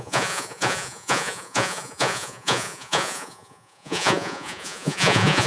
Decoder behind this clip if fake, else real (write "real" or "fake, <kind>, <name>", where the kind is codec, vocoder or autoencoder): fake, vocoder, Vocos